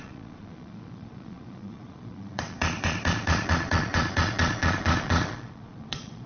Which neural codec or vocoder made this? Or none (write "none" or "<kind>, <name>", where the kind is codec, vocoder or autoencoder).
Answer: vocoder, Vocos